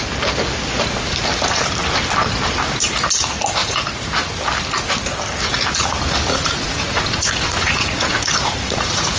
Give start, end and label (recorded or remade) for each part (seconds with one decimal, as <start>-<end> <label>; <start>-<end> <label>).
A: 0.0-3.6 recorded; 3.6-4.1 remade; 4.1-6.3 recorded; 6.3-9.2 remade